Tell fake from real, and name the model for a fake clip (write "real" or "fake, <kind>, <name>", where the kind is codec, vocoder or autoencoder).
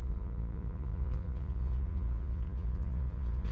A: fake, vocoder, Vocos